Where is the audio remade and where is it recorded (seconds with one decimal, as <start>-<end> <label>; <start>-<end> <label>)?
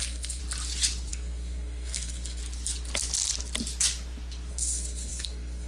0.0-0.4 remade; 0.4-1.1 recorded; 1.1-2.4 remade; 2.4-4.5 recorded; 4.5-5.7 remade